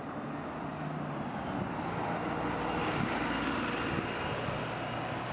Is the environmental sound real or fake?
real